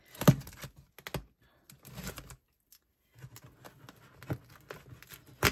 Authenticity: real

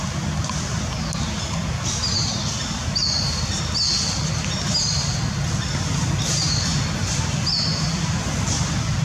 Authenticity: real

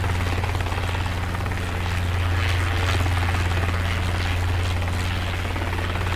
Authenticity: real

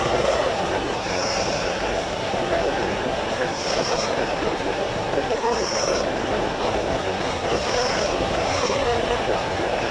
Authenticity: fake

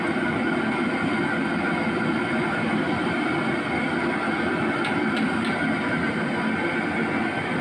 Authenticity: real